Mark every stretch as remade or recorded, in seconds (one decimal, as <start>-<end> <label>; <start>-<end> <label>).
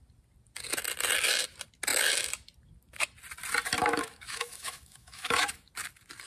0.0-3.8 recorded; 3.8-5.7 remade; 5.7-6.3 recorded